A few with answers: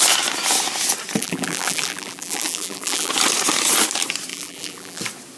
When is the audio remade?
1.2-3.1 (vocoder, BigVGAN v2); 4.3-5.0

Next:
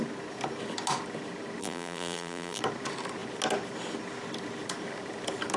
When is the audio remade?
1.6-2.6 (vocoder, BigVGAN v2)

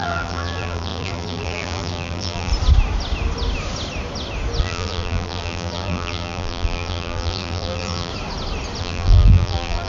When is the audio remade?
0.0-2.5 (vocoder, BigVGAN v2); 4.6-8.1; 8.8-9.9

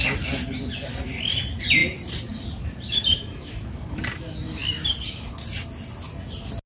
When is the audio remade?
1.8-4.1 (vocoder, BigVGAN v2)

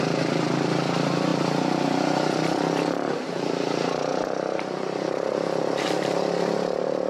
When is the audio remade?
none